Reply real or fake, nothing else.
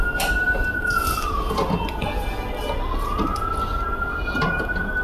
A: real